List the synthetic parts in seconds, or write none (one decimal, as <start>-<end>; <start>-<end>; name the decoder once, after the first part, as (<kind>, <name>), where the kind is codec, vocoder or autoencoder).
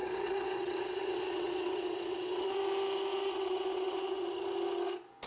0.0-2.6 (vocoder, WaveNeXt); 3.1-4.2